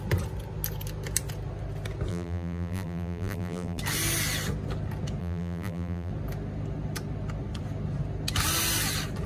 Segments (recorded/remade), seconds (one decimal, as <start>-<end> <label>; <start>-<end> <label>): 0.0-2.1 recorded; 2.1-3.8 remade; 3.8-5.2 recorded; 5.2-6.1 remade; 6.1-9.3 recorded